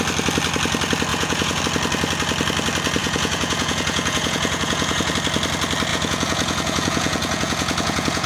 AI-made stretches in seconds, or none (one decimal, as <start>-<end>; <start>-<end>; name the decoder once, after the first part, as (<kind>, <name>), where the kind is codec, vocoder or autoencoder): 1.1-1.6 (vocoder, Vocos); 3.0-5.1; 5.9-8.3